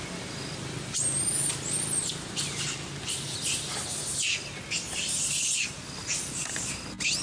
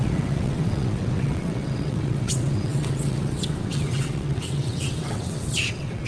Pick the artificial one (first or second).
second